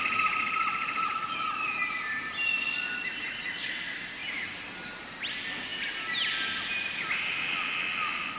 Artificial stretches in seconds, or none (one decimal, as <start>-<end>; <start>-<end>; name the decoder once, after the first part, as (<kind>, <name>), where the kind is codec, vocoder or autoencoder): 4.2-4.7 (vocoder, BigVGAN v2); 5.7-7.4

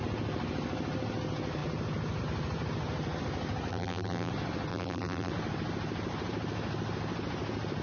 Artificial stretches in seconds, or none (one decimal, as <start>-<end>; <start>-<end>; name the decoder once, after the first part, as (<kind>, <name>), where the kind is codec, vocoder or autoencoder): 3.7-4.3 (vocoder, BigVGAN v2); 4.7-5.3

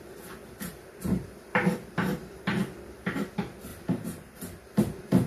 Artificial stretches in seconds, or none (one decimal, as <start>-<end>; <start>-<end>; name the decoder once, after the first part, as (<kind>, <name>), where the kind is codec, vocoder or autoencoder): 0.0-5.3 (vocoder, BigVGAN v2)

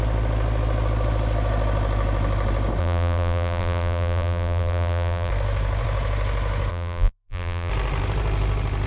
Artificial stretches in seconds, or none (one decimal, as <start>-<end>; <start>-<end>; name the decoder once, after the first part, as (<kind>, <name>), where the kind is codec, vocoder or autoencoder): 2.8-5.3 (vocoder, BigVGAN v2); 6.7-7.7

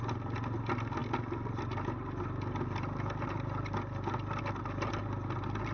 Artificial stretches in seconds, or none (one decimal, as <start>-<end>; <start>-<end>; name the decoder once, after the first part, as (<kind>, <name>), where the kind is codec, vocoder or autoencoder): none

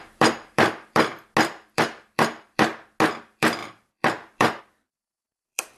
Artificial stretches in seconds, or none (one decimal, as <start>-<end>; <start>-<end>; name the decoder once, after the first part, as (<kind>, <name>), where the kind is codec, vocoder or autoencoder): 0.0-1.1 (vocoder, BigVGAN v2); 1.7-2.7; 3.2-5.8